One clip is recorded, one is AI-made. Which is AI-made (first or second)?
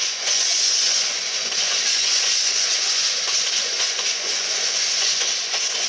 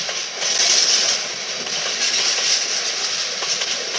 first